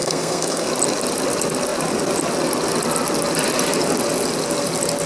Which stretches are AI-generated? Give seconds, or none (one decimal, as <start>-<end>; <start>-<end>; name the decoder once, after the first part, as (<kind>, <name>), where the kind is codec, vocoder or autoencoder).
0.0-0.7 (codec, SNAC)